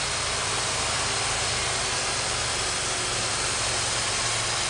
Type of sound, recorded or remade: recorded